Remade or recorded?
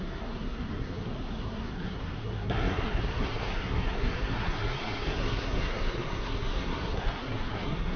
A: remade